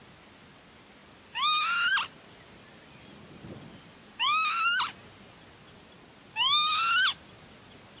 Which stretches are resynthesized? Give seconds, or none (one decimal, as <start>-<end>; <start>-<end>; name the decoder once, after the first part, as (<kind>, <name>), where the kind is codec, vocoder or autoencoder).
none